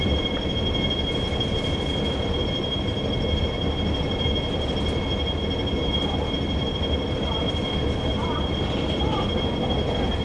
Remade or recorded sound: recorded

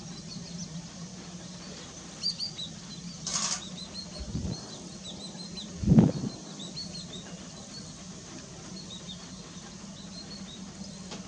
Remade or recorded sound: recorded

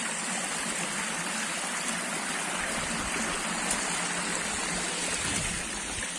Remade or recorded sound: recorded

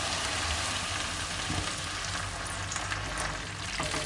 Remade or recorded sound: recorded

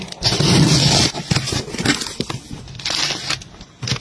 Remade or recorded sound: recorded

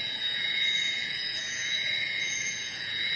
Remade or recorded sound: remade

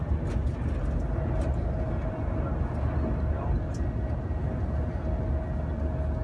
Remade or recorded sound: recorded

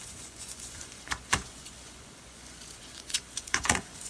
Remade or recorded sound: remade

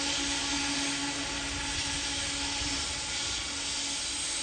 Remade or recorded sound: recorded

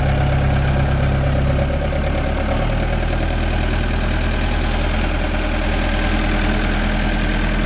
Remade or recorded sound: recorded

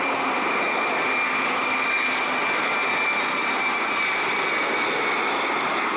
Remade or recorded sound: recorded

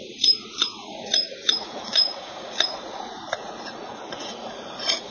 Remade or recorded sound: remade